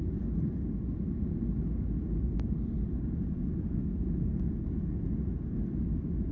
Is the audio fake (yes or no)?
no